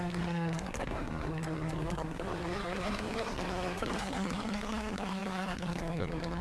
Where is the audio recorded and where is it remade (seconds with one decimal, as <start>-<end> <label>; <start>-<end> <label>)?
0.0-6.4 remade